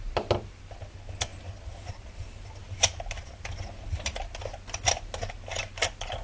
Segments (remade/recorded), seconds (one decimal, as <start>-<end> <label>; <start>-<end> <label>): 0.0-6.2 recorded